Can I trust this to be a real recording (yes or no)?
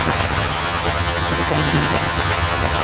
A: no